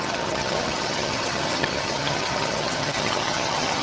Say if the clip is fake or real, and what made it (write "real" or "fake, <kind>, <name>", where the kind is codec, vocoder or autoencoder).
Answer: fake, vocoder, HiFi-GAN